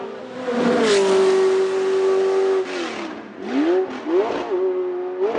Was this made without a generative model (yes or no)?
yes